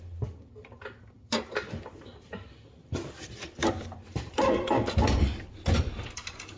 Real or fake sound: fake